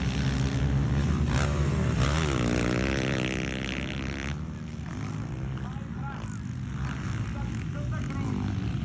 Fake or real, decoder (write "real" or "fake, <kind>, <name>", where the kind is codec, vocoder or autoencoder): real